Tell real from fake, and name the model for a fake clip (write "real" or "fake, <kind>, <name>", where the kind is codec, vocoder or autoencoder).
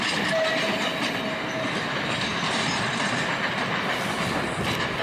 real